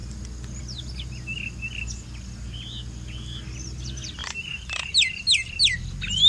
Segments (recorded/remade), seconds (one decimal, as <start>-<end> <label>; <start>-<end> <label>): 0.0-4.2 recorded; 4.2-4.9 remade; 4.9-6.3 recorded